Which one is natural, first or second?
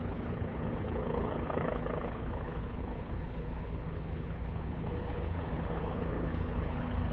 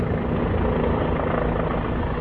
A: second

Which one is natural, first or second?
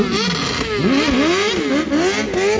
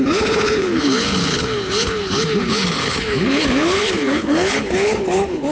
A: first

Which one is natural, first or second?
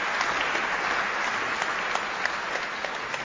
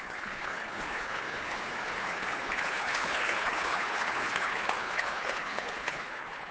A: first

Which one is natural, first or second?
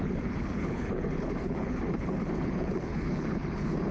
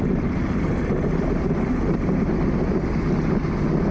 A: second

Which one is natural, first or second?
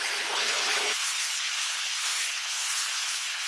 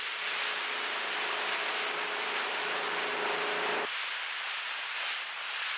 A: second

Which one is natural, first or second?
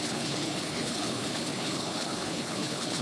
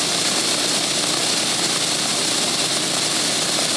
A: second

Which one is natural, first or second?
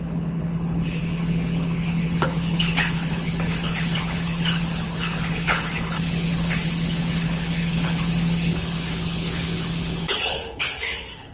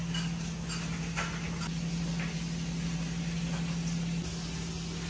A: second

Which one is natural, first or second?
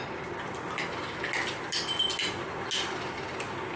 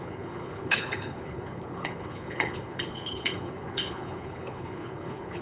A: first